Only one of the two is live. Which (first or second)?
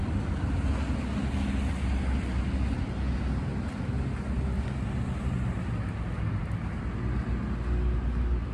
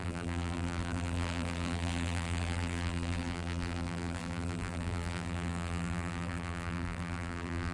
first